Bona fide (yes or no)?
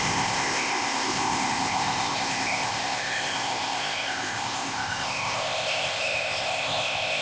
no